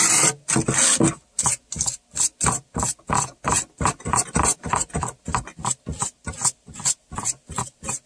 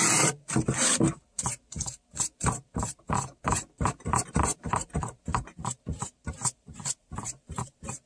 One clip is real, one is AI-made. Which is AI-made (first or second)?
second